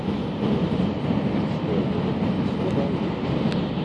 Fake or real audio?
real